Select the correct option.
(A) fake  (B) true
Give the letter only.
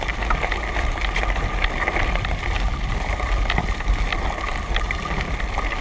B